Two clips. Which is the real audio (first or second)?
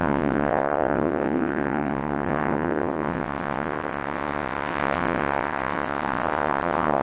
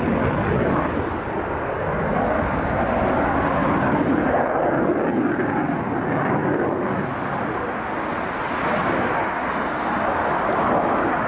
second